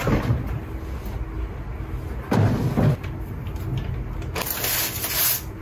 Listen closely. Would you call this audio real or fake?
real